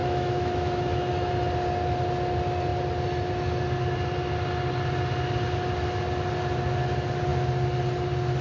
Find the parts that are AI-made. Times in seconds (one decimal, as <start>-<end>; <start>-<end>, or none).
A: 0.0-1.3